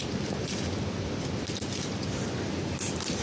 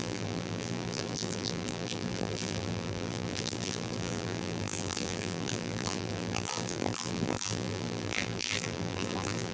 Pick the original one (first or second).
first